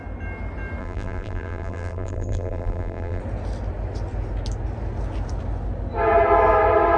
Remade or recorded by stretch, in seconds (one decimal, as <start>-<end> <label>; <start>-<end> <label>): 0.0-0.8 recorded; 0.8-3.2 remade; 3.2-7.0 recorded